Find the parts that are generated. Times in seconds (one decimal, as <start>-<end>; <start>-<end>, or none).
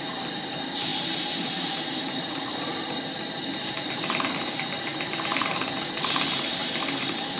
0.0-7.4